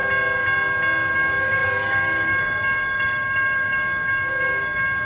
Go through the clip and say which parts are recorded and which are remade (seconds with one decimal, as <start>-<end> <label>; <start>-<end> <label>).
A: 0.0-1.1 recorded; 1.1-5.1 remade